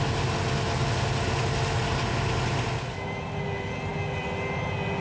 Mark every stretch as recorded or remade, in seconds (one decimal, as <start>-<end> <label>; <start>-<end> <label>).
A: 0.0-5.0 recorded